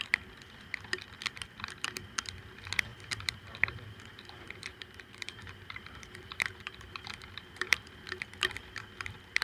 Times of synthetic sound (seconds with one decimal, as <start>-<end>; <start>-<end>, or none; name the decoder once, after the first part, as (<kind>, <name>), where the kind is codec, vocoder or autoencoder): 2.9-7.9 (vocoder, BigVGAN v2)